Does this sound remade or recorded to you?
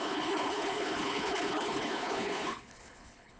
remade